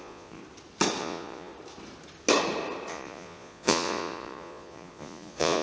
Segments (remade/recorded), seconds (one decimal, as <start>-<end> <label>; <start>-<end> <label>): 0.0-0.4 remade; 0.4-1.0 recorded; 1.0-1.5 remade; 1.5-2.9 recorded; 2.9-5.6 remade